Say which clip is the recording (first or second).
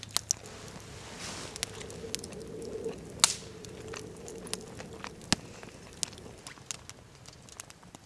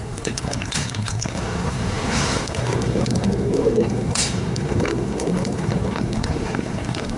first